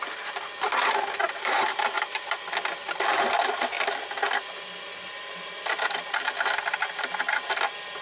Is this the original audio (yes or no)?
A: yes